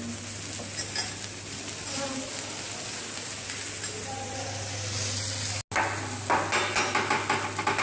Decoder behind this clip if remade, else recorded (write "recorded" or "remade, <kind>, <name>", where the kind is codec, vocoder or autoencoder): recorded